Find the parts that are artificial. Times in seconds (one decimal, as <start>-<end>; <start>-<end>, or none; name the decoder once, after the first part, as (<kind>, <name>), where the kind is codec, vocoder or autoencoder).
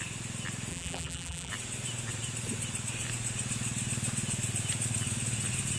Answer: 0.7-1.5 (vocoder, BigVGAN v2)